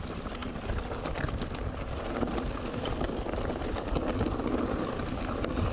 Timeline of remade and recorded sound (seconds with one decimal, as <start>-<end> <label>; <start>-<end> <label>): 0.0-5.7 recorded